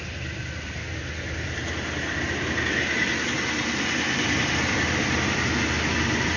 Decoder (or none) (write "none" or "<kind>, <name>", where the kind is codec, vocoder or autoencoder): none